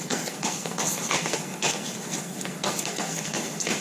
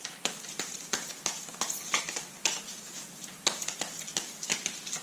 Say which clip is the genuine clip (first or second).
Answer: second